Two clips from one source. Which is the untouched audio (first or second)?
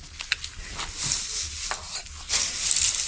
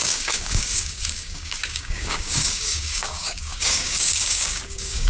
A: first